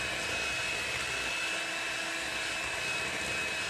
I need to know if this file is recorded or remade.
recorded